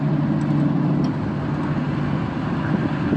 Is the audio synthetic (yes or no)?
no